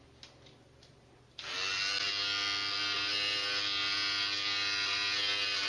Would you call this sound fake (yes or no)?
no